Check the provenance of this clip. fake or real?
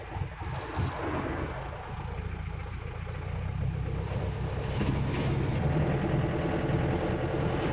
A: real